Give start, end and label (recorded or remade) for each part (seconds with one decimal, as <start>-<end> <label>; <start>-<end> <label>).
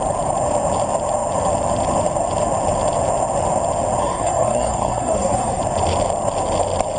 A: 0.0-4.0 recorded; 4.0-5.6 remade; 5.6-7.0 recorded